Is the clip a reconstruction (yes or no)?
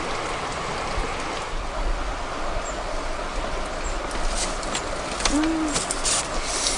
no